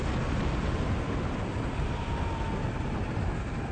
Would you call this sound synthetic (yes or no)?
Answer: no